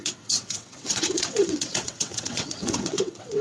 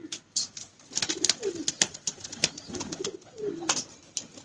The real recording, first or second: second